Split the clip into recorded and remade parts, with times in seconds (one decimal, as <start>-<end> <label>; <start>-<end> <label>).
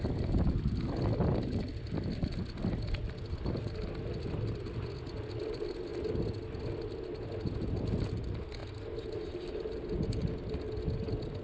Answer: 0.0-11.4 recorded